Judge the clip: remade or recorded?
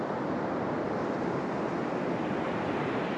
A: recorded